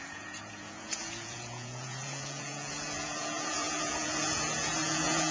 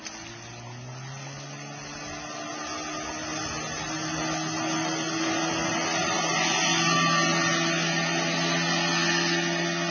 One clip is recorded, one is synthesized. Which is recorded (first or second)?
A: second